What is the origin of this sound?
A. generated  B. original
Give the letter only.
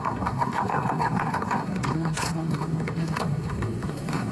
A